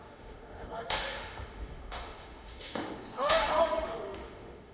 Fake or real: fake